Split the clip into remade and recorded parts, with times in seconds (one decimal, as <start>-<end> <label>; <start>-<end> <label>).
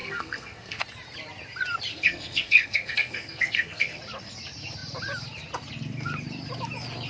0.0-0.8 remade; 0.8-1.9 recorded; 1.9-4.0 remade; 4.0-7.1 recorded